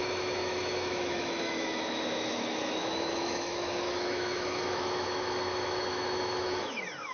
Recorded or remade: remade